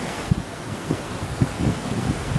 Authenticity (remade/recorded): remade